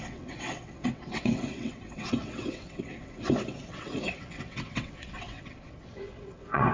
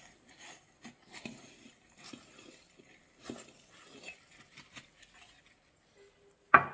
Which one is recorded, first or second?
second